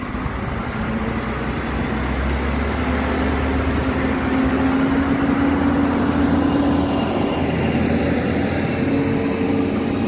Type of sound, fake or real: real